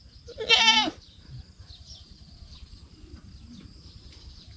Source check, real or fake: real